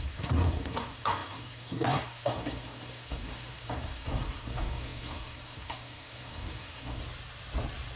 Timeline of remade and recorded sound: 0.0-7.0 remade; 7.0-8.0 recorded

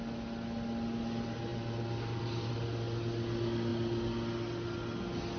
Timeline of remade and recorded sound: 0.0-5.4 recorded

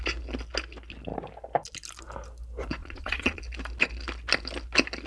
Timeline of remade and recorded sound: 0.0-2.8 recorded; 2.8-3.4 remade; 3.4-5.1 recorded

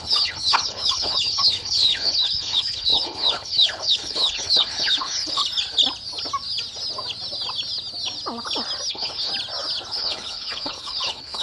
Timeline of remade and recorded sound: 0.0-5.4 remade; 5.4-8.9 recorded; 8.9-9.3 remade; 9.3-9.9 recorded; 9.9-11.4 remade

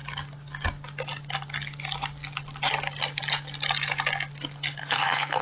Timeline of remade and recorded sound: 0.0-4.8 recorded; 4.8-5.4 remade

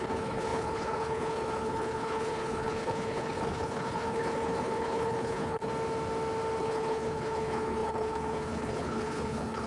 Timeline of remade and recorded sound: 0.0-5.7 remade; 5.7-6.6 recorded; 6.6-9.7 remade

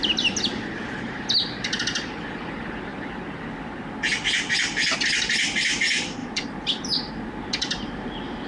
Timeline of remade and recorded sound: 0.0-6.2 recorded; 6.2-7.1 remade; 7.1-8.5 recorded